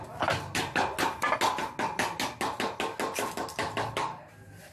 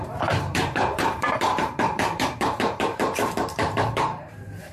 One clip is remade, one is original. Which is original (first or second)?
first